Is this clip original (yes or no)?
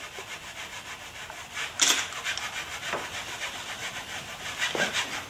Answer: yes